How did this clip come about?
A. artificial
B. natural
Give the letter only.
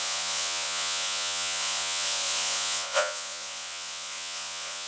A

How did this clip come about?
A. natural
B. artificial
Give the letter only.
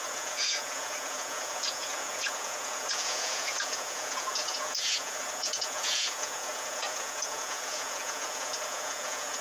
B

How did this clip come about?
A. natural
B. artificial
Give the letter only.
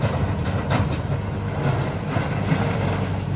A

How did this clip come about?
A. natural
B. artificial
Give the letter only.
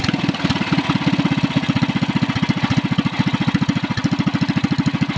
A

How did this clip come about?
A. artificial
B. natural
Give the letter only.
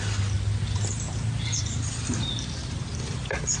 B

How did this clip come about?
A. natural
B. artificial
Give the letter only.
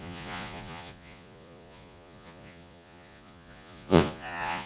B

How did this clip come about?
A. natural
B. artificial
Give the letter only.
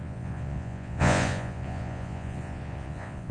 B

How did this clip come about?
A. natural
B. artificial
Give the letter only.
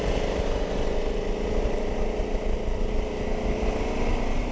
A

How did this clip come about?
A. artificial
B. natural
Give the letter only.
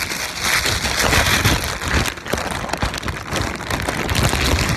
B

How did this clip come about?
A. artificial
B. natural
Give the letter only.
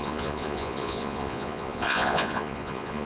A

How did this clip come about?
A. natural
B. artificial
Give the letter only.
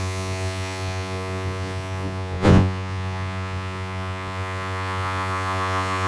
B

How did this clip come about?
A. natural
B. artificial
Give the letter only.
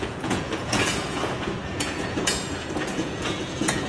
B